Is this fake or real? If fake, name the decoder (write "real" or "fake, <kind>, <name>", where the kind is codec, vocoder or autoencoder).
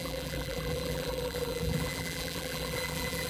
fake, vocoder, BigVGAN v2